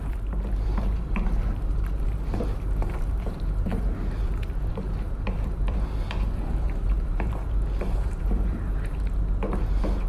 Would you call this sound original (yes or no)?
no